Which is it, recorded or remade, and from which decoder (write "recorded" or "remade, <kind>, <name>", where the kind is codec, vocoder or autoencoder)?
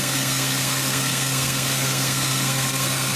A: remade, codec, SNAC